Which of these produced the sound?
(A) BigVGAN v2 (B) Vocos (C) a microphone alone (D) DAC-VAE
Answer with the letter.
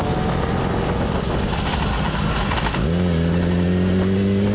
C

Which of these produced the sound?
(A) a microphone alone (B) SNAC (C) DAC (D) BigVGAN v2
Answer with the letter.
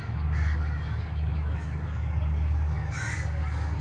C